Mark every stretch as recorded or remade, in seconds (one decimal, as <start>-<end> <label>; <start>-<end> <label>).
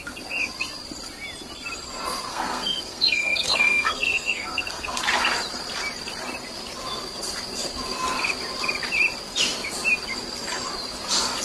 0.0-2.3 recorded; 2.3-5.0 remade; 5.0-11.4 recorded